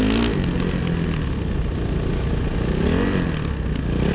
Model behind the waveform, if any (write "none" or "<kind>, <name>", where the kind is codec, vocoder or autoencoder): none